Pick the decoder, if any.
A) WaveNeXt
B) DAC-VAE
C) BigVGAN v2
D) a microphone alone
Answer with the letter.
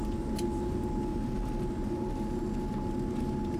D